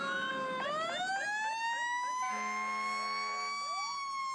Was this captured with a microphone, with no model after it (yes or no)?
yes